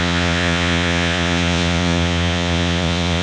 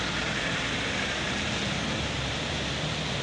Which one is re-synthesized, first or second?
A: first